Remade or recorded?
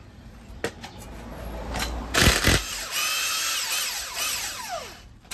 recorded